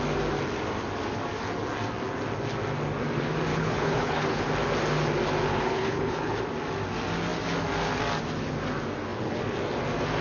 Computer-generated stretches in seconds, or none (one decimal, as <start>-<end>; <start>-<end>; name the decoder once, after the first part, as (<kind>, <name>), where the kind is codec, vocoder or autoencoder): 3.5-4.5 (codec, HILCodec); 5.5-6.4